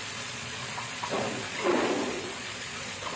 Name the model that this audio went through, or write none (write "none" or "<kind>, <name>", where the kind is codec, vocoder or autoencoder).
vocoder, Vocos